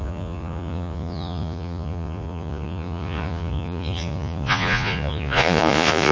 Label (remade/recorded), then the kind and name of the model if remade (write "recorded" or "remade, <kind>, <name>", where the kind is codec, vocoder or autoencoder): remade, vocoder, Vocos